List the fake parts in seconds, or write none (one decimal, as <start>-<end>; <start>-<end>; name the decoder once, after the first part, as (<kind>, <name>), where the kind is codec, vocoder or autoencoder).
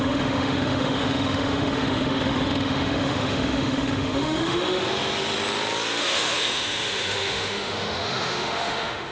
0.0-4.8 (autoencoder, DAC-VAE); 6.0-9.1